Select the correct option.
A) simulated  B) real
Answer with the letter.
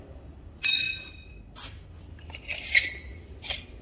B